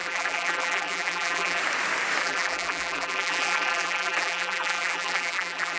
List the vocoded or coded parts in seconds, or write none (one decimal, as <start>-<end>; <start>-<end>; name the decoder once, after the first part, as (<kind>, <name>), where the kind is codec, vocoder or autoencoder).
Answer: 0.0-1.6 (vocoder, BigVGAN v2); 2.2-5.8